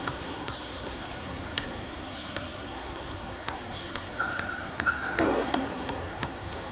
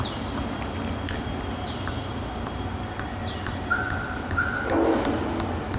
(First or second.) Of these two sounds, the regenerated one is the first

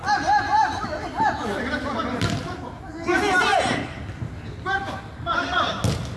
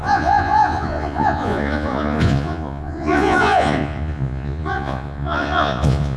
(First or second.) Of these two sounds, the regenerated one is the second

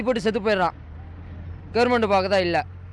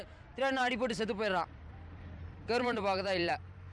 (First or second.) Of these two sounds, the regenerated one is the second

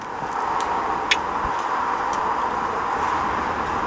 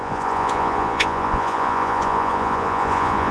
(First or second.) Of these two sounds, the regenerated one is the second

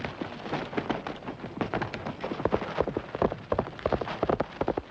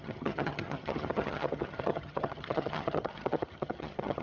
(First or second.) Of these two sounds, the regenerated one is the second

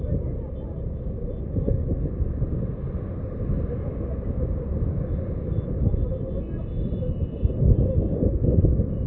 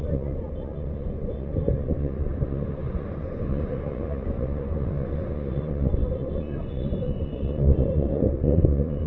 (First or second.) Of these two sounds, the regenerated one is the second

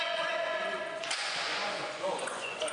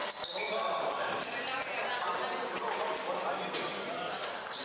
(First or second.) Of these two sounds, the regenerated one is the first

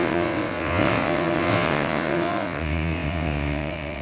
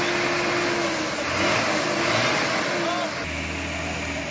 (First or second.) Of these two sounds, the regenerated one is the first